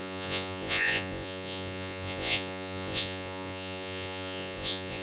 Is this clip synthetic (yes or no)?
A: yes